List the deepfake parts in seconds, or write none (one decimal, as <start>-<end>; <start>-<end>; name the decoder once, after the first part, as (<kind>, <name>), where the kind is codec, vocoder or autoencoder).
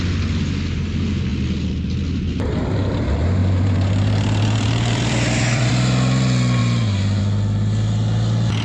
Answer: 3.4-5.7 (vocoder, BigVGAN v2); 6.6-7.2